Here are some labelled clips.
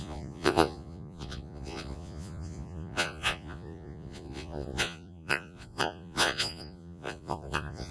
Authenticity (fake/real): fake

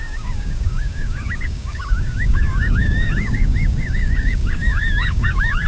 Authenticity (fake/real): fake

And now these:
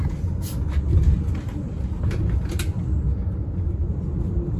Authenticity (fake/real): real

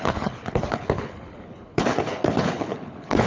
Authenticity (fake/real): fake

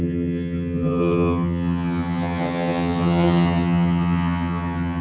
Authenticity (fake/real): fake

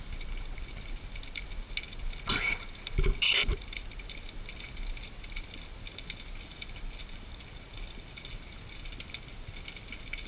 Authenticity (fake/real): real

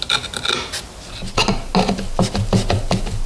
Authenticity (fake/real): real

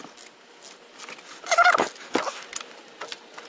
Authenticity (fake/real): real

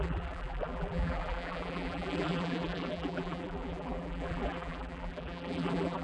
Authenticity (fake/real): fake